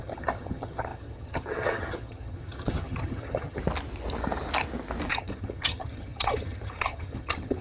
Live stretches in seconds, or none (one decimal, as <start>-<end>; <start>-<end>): 3.6-5.1